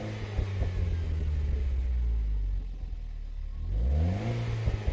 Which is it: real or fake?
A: real